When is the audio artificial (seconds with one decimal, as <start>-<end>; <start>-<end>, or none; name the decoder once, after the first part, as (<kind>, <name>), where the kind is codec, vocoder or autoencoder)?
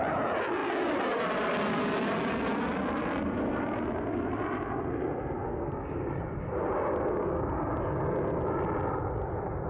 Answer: 5.4-6.1 (codec, DAC); 7.2-7.7